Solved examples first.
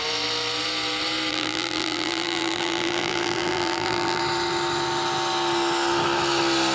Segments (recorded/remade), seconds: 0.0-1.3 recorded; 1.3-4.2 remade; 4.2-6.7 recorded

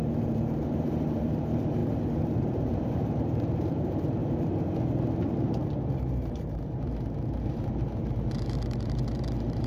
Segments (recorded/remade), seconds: 0.0-1.8 remade; 1.8-2.4 recorded; 2.4-4.2 remade; 4.2-7.4 recorded; 7.4-9.7 remade